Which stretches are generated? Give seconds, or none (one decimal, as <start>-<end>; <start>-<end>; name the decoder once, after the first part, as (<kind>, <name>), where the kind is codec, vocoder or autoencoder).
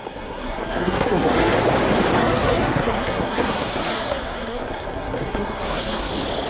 0.0-1.5 (codec, SNAC); 2.2-6.1